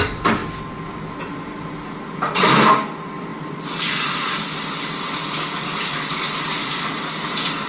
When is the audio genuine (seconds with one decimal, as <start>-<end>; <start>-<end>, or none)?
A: 0.0-3.3; 4.1-5.2; 6.2-7.7